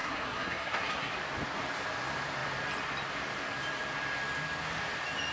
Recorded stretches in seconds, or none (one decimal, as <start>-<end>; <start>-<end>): 1.1-5.3